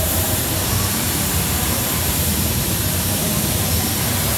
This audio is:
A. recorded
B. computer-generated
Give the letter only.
B